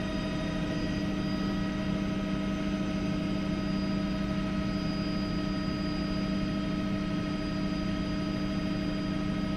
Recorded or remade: recorded